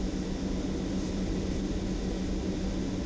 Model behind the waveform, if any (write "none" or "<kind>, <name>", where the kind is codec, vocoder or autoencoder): none